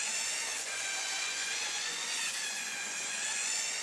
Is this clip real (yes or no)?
no